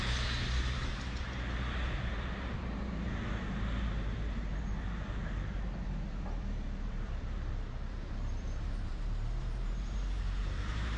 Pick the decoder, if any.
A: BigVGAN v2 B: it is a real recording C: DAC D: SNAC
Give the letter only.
A